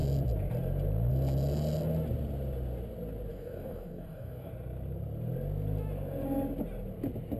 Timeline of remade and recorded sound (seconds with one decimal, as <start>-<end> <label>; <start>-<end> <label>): 0.0-3.3 recorded; 3.3-4.5 remade; 4.5-7.4 recorded